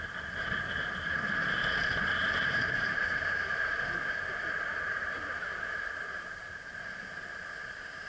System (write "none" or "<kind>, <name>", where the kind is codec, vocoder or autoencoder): vocoder, BigVGAN v2